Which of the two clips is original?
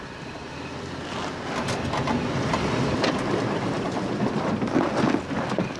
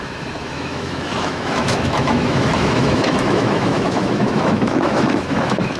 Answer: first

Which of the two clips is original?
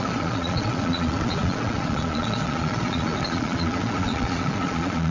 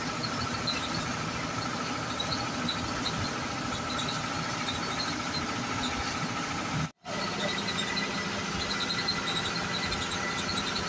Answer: second